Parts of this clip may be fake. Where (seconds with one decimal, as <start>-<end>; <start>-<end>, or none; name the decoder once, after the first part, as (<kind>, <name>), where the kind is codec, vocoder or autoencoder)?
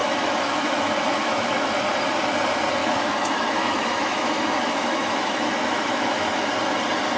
0.0-1.9 (autoencoder, DAC-VAE); 2.8-6.5